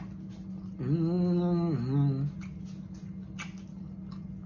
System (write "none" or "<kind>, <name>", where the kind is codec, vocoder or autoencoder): none